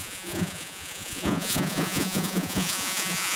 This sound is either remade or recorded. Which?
remade